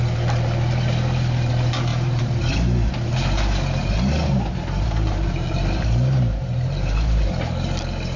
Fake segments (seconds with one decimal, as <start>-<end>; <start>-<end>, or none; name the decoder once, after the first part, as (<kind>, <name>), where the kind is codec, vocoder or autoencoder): 1.9-2.9 (vocoder, BigVGAN v2); 3.8-8.2